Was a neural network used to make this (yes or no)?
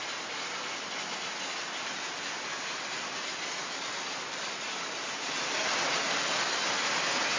no